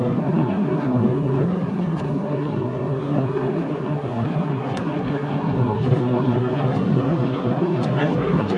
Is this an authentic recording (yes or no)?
no